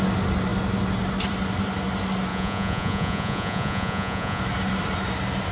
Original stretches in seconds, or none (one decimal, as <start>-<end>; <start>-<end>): 0.0-2.3; 4.4-5.5